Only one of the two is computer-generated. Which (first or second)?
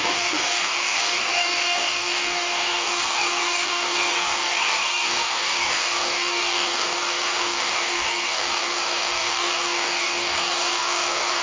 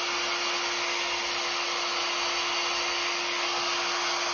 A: first